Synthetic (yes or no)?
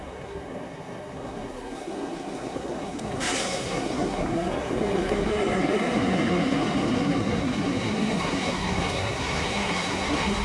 yes